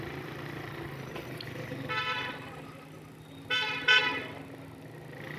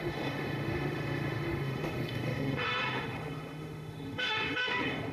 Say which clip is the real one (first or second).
first